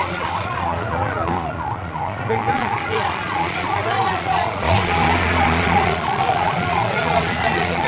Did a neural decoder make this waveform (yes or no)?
yes